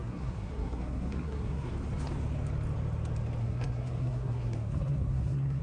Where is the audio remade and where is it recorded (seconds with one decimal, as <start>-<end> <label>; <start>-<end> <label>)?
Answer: 0.0-1.7 remade; 1.7-3.4 recorded; 3.4-5.6 remade